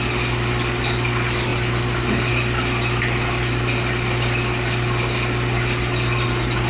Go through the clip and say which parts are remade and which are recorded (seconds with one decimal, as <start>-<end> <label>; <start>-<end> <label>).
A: 0.0-6.7 recorded